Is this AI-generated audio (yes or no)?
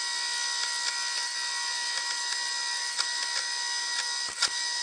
no